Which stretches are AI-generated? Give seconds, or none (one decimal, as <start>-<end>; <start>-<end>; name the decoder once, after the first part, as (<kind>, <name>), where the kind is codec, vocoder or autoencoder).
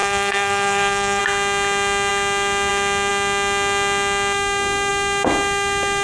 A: 0.0-1.2 (codec, SNAC)